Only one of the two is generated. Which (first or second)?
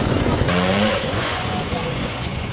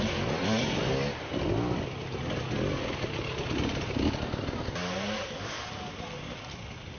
first